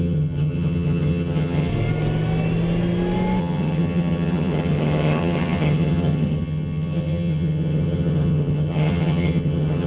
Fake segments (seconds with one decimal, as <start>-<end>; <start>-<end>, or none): 0.0-1.7; 3.4-9.9